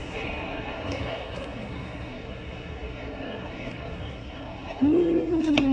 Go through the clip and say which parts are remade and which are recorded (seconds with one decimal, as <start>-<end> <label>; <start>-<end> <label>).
0.0-5.7 remade